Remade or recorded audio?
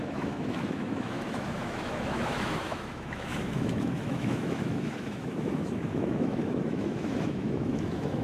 remade